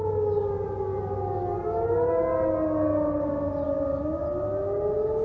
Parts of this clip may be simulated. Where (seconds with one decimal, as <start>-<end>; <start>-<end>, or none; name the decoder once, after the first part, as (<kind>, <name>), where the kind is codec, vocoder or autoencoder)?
none